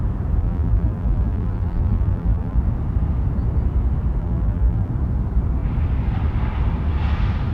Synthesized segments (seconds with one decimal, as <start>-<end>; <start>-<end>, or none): 0.4-2.6; 4.2-4.9